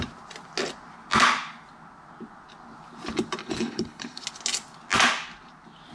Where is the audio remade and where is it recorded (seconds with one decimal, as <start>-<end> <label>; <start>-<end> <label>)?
0.0-3.4 recorded; 3.4-4.2 remade; 4.2-5.9 recorded